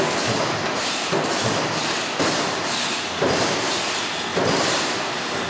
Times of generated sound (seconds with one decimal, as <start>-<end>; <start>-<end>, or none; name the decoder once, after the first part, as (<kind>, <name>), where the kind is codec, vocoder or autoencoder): none